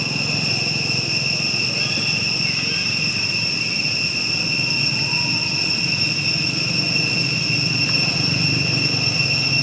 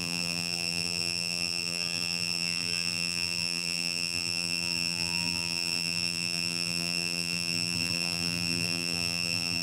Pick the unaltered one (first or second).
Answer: first